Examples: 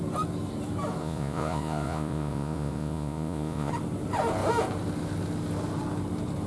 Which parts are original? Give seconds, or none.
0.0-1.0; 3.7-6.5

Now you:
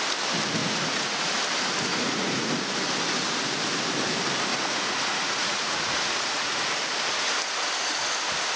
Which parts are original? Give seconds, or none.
0.0-0.6; 1.3-1.9; 2.7-4.5; 6.6-8.6

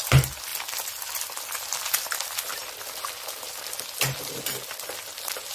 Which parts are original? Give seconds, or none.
0.0-5.5

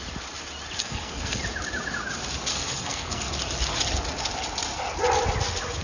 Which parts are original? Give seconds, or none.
0.0-0.8; 1.4-2.5; 3.3-5.8

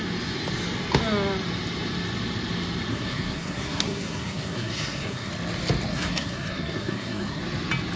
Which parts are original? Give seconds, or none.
0.0-2.9; 5.3-5.9; 7.4-8.0

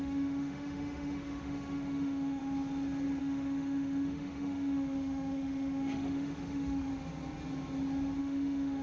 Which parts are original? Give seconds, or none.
2.4-3.2; 6.9-8.2

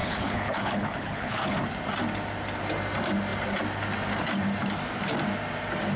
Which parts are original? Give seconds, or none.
1.6-6.0

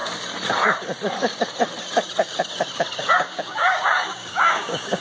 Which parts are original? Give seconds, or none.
0.0-3.0